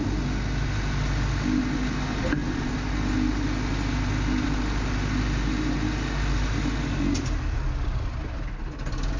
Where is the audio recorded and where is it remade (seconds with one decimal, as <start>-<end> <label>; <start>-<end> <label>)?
0.0-9.2 recorded